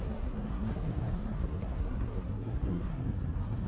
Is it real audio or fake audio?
fake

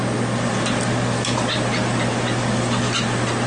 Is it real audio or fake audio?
real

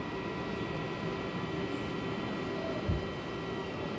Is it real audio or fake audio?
real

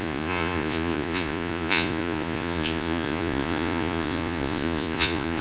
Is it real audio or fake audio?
fake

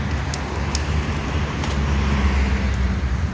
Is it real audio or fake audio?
real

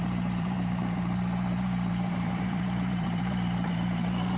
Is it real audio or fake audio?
fake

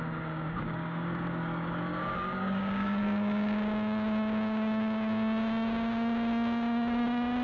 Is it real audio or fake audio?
fake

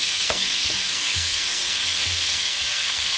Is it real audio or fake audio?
fake